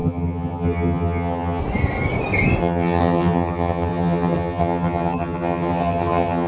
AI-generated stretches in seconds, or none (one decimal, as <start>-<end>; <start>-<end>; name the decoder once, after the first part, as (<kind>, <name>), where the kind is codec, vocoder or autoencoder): 0.0-1.6 (vocoder, HiFi-GAN); 2.6-6.5